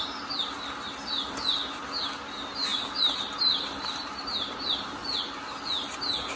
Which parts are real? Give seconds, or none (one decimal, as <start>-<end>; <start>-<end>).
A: 0.0-6.4